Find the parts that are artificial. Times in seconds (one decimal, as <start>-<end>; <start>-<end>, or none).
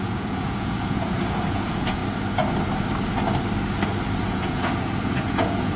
0.0-2.0; 4.3-5.8